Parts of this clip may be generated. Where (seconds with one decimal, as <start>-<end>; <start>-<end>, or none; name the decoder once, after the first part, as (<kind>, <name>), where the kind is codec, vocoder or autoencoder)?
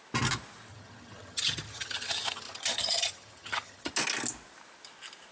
0.7-3.9 (vocoder, HiFi-GAN)